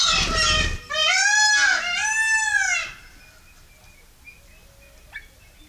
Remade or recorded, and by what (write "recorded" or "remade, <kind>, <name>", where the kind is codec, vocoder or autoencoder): recorded